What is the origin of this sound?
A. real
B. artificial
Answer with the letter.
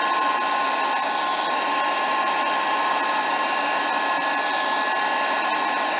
A